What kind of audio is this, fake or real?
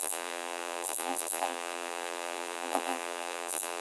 fake